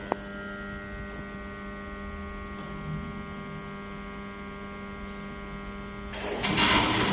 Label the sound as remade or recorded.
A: recorded